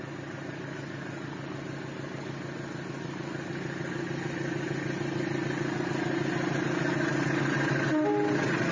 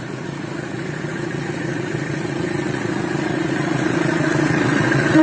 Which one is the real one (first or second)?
first